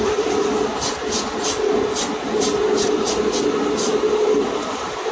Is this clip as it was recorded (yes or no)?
yes